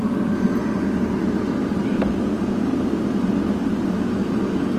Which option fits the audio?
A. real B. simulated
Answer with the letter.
A